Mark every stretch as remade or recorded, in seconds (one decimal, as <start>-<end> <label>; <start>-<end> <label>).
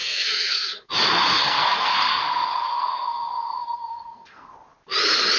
0.0-0.9 remade; 0.9-1.3 recorded; 1.3-4.5 remade; 4.5-5.4 recorded